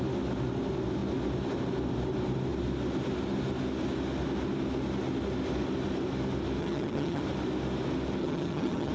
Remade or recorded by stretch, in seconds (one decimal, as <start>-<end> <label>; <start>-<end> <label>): 0.0-6.6 recorded; 6.6-7.2 remade; 7.2-8.2 recorded; 8.2-8.9 remade